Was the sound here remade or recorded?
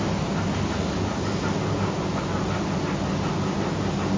recorded